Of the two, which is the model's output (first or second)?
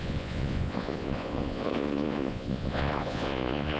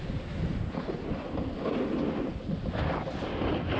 first